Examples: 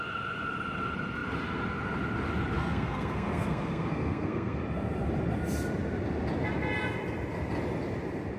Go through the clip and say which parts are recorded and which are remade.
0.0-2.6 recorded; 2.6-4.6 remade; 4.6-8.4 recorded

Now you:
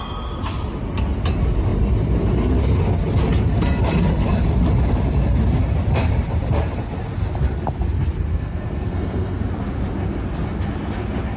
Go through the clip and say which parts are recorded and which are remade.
0.0-8.3 recorded; 8.3-9.4 remade; 9.4-11.4 recorded

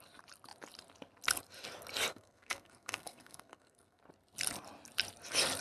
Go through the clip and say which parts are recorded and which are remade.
0.0-2.1 recorded; 2.1-4.0 remade; 4.0-5.6 recorded

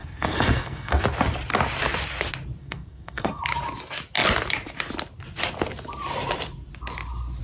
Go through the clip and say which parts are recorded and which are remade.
0.0-1.0 remade; 1.0-2.6 recorded; 2.6-3.4 remade; 3.4-7.4 recorded

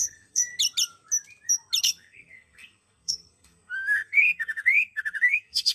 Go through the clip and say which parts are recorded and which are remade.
0.0-0.5 remade; 0.5-1.8 recorded; 1.8-5.7 remade

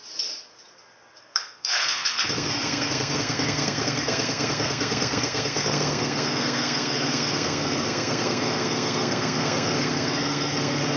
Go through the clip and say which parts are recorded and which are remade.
0.0-1.2 recorded; 1.2-11.0 remade

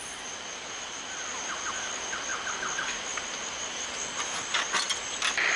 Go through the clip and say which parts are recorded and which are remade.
0.0-5.6 recorded

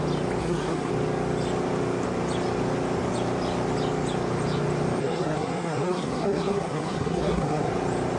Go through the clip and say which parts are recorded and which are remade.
0.0-0.4 recorded; 0.4-0.9 remade; 0.9-5.0 recorded; 5.0-7.7 remade; 7.7-8.2 recorded